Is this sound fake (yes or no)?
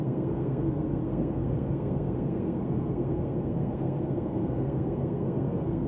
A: yes